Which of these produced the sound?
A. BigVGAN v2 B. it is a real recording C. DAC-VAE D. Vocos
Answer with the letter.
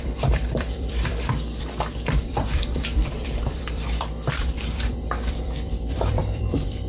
A